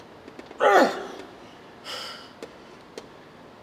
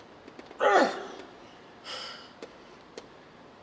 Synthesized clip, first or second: second